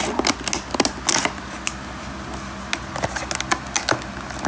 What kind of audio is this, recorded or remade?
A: recorded